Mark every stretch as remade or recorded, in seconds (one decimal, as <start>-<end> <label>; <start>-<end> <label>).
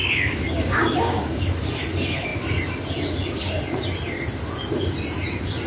0.0-1.4 remade; 1.4-5.7 recorded